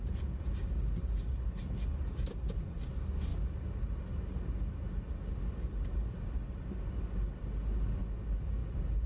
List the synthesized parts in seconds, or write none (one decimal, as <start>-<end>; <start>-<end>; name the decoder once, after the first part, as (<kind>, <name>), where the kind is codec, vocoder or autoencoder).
none